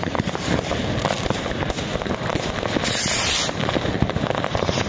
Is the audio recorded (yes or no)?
yes